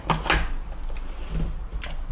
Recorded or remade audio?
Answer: recorded